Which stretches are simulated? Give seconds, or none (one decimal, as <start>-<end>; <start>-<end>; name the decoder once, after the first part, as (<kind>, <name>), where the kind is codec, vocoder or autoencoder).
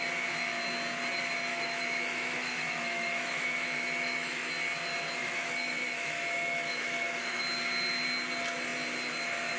1.5-4.5 (autoencoder, DAC-VAE); 5.2-7.4